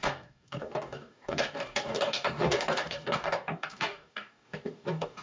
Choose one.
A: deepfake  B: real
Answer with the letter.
A